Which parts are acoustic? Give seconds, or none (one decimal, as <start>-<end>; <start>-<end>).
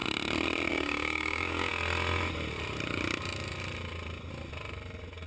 0.0-0.7; 1.7-5.3